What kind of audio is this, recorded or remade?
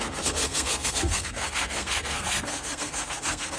remade